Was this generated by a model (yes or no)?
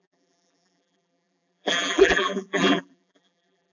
yes